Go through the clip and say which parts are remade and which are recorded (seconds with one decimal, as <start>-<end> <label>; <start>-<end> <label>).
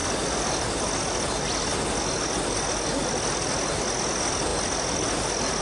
0.0-5.6 recorded